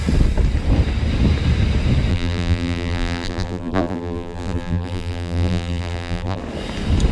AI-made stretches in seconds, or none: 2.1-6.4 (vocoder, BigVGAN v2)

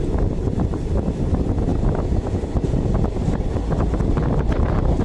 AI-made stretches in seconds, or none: none

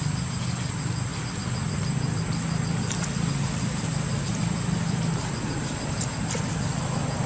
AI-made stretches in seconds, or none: none

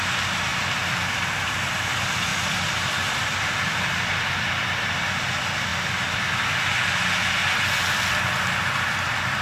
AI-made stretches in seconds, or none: 2.3-4.1 (vocoder, BigVGAN v2)

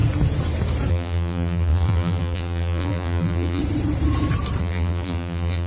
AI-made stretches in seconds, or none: 0.9-3.6 (vocoder, BigVGAN v2); 4.6-5.7